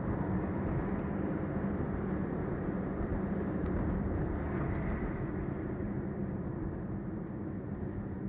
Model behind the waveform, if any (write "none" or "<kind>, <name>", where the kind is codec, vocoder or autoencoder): none